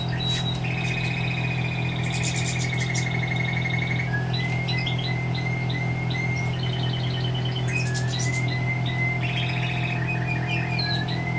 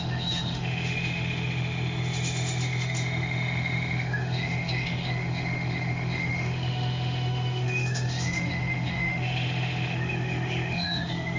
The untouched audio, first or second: first